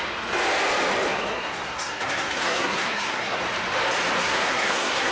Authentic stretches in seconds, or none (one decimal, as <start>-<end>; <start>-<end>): 0.0-1.1; 3.4-4.2